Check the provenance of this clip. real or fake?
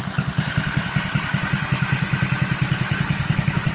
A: real